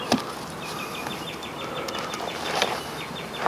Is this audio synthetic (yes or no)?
no